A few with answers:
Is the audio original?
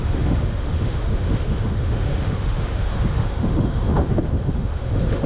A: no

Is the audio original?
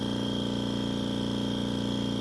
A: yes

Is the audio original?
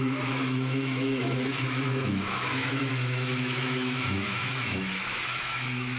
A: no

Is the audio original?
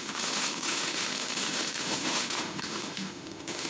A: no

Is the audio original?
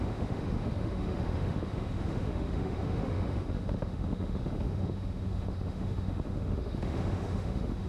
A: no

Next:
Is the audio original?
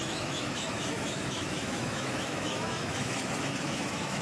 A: no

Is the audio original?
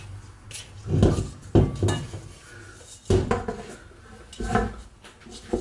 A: yes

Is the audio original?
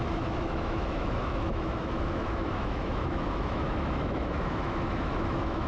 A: no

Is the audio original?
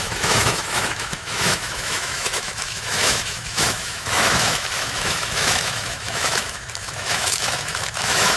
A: no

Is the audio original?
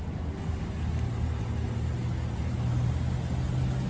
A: yes